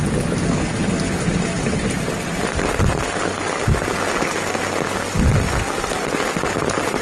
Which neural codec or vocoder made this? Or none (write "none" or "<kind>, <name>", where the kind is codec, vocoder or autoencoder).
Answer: none